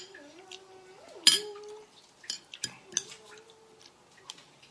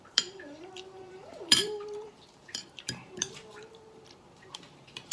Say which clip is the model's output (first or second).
second